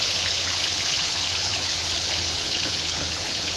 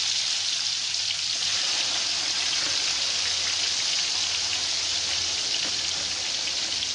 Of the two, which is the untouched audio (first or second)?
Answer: second